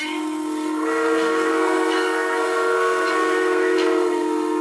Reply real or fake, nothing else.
fake